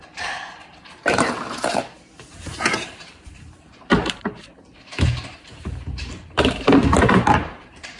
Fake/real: fake